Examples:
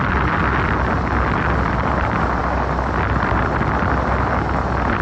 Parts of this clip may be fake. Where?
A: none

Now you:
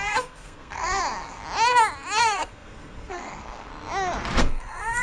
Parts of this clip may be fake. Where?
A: 0.0-1.4 (codec, SNAC); 2.2-3.7; 4.4-5.0

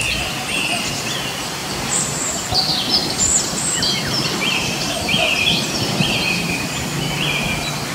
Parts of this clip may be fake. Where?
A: 1.6-2.5 (vocoder, BigVGAN v2); 3.0-6.7